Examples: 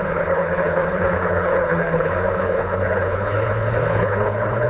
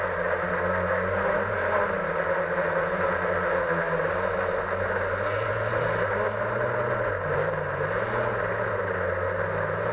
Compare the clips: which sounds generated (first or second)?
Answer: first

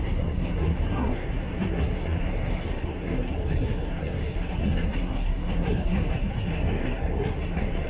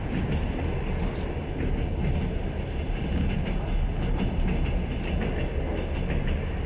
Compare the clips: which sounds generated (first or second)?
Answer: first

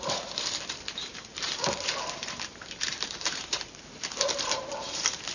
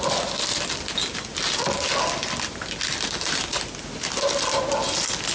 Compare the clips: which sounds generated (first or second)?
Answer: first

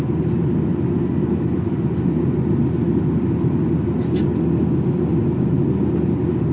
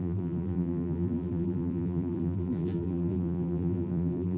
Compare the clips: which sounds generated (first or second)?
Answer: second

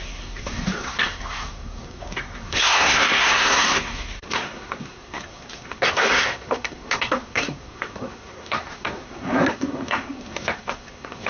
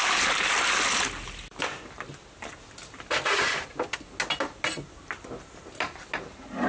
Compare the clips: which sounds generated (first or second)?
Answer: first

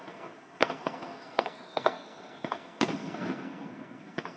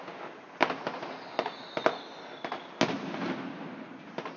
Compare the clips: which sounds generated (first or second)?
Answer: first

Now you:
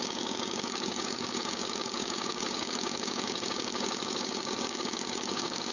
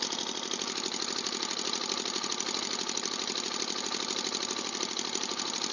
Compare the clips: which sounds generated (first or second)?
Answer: first